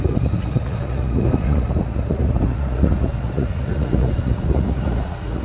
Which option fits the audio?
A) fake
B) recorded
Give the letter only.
A